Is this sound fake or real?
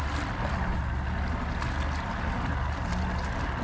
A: real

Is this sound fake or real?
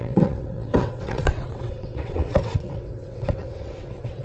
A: fake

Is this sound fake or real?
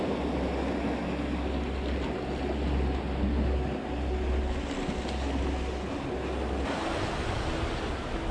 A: real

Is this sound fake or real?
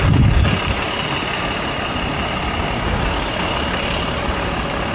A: real